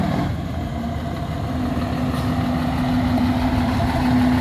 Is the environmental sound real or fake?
real